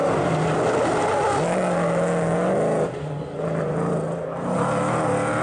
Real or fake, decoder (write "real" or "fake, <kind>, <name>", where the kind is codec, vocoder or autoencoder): real